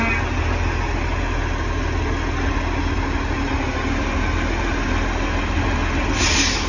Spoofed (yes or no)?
no